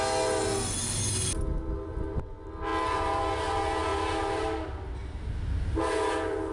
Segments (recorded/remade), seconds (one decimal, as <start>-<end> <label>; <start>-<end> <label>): 0.0-6.5 recorded